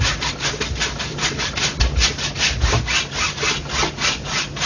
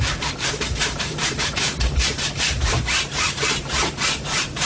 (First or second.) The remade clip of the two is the second